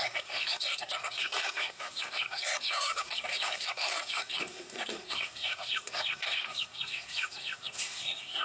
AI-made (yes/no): yes